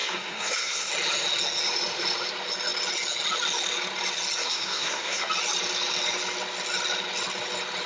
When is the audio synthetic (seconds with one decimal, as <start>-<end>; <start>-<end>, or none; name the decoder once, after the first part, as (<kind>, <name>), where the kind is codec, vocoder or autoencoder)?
0.0-0.9 (codec, SNAC); 4.4-5.3